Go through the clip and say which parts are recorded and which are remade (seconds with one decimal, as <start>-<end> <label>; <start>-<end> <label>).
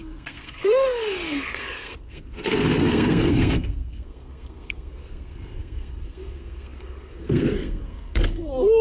0.0-8.8 remade